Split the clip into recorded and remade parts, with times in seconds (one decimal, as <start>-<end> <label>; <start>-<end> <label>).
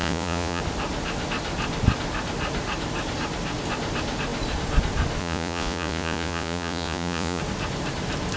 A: 0.0-0.6 remade; 0.6-5.2 recorded; 5.2-7.4 remade; 7.4-8.4 recorded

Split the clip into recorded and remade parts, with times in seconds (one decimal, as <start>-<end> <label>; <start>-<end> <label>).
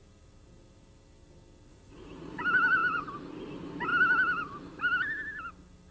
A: 0.0-1.7 recorded; 1.7-2.4 remade; 2.4-5.9 recorded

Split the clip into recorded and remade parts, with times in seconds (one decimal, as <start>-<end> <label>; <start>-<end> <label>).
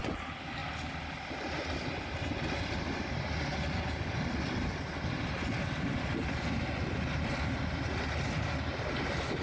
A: 0.0-9.4 recorded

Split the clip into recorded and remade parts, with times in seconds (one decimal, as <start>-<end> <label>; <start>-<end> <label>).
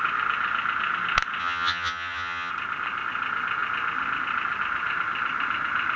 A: 0.0-1.4 recorded; 1.4-2.5 remade; 2.5-6.0 recorded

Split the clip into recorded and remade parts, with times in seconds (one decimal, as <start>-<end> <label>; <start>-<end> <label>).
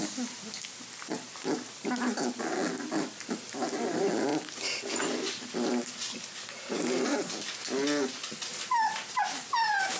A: 0.0-10.0 recorded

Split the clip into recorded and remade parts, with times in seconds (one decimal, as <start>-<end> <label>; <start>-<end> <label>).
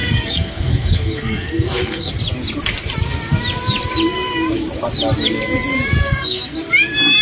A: 0.0-2.1 remade; 2.1-6.0 recorded; 6.0-6.7 remade; 6.7-7.2 recorded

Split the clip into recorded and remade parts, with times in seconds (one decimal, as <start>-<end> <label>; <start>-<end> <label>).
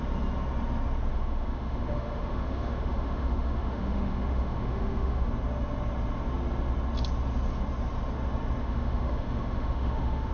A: 0.0-1.1 recorded; 1.1-5.3 remade; 5.3-8.6 recorded; 8.6-10.3 remade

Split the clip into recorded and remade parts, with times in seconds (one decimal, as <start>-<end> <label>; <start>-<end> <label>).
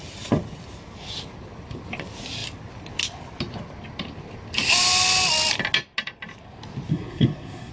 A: 0.0-6.9 recorded; 6.9-7.7 remade